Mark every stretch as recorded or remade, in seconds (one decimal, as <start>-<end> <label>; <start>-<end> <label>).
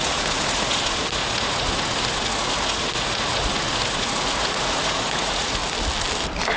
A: 0.0-5.6 remade; 5.6-6.6 recorded